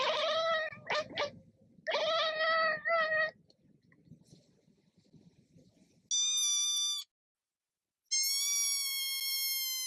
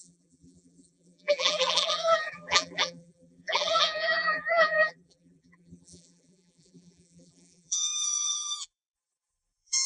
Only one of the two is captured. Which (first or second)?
first